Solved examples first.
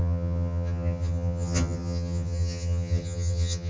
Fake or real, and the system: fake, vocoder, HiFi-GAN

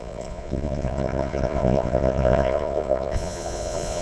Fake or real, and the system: fake, vocoder, Vocos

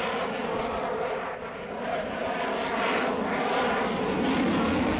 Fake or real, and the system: real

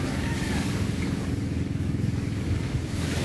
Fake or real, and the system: fake, codec, DAC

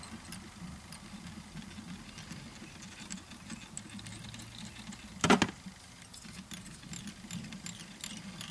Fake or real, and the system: real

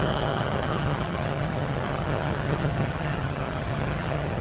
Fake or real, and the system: fake, vocoder, HiFi-GAN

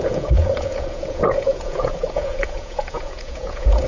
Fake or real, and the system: fake, vocoder, Vocos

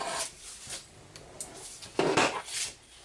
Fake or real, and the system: real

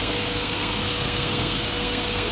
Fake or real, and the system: fake, codec, SNAC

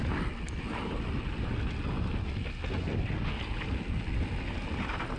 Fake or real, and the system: real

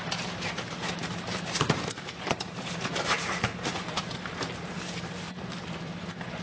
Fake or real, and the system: fake, vocoder, BigVGAN v2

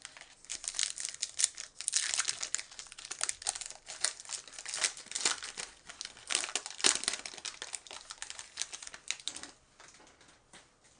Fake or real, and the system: real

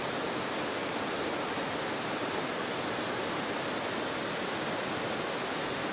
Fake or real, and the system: real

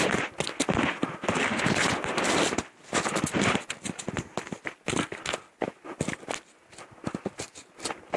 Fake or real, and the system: real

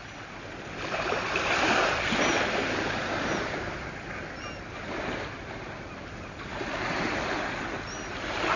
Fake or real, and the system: real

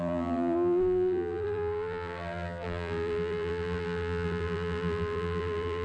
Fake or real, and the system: fake, vocoder, BigVGAN v2